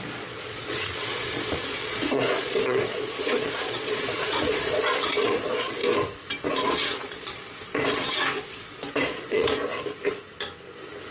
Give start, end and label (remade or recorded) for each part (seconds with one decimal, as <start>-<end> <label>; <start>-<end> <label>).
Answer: 0.0-5.8 remade; 5.8-6.5 recorded; 6.5-9.6 remade; 9.6-11.1 recorded